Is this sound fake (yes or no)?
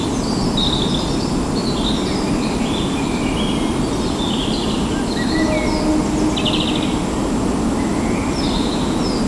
no